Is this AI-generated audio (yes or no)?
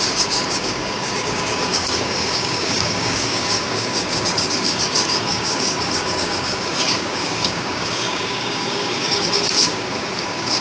yes